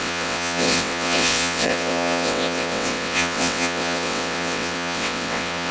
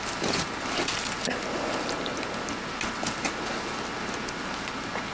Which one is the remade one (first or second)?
first